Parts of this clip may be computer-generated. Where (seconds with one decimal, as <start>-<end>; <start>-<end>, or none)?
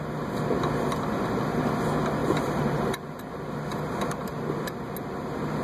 2.2-3.2; 3.7-4.3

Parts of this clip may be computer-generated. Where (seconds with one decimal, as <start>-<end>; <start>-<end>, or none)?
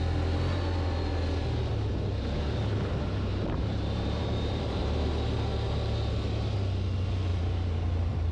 3.3-5.1; 7.3-8.3